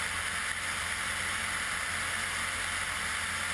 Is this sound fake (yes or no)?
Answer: no